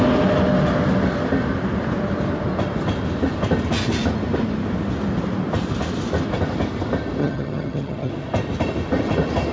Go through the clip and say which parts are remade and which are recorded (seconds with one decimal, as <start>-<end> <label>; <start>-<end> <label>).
0.0-7.2 recorded; 7.2-8.1 remade; 8.1-9.5 recorded